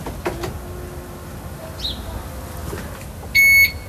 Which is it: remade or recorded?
recorded